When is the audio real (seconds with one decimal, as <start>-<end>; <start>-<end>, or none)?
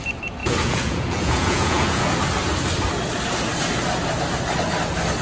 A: 0.0-0.4; 2.1-5.2